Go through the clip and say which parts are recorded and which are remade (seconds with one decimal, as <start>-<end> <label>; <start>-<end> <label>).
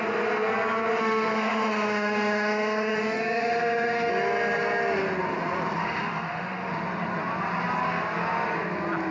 0.0-1.0 recorded; 1.0-4.1 remade; 4.1-5.8 recorded; 5.8-6.7 remade; 6.7-9.1 recorded